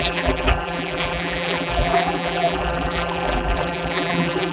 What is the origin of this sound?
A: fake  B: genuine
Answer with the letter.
A